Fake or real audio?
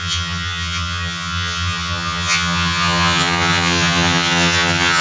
fake